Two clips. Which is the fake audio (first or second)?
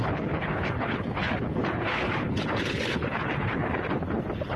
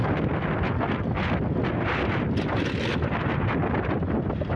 first